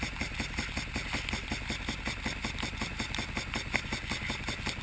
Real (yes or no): yes